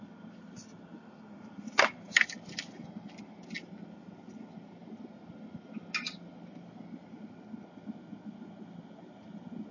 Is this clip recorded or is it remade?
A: recorded